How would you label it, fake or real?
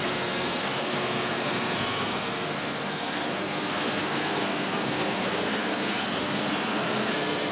fake